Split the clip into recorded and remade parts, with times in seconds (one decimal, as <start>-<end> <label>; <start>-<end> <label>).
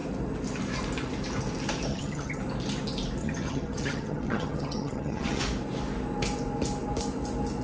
0.0-1.9 recorded; 1.9-2.4 remade; 2.4-3.2 recorded; 3.2-5.4 remade; 5.4-7.6 recorded